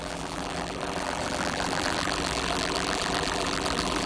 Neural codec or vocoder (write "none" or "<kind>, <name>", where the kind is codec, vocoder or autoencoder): vocoder, BigVGAN v2